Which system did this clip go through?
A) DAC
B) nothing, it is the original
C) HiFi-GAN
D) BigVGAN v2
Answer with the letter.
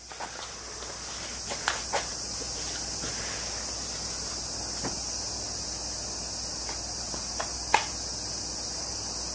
B